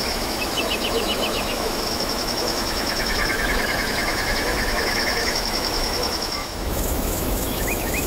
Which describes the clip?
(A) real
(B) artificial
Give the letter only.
B